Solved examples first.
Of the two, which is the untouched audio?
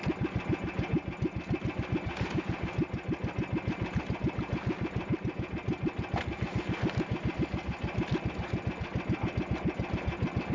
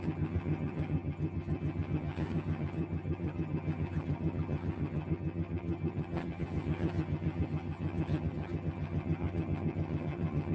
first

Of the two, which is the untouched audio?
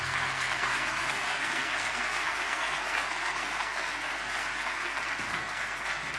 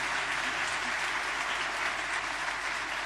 second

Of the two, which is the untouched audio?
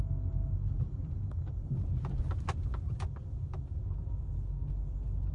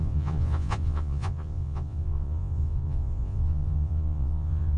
first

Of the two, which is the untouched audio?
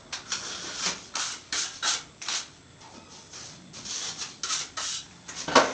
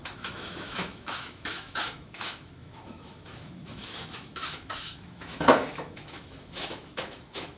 first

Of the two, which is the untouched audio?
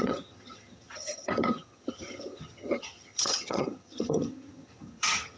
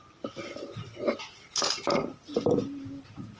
second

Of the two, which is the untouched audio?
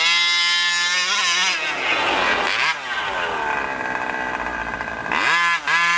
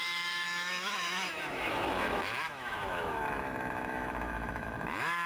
first